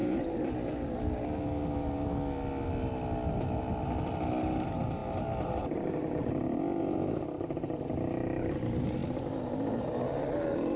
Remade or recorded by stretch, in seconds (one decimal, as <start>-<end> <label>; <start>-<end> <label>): 0.0-10.8 recorded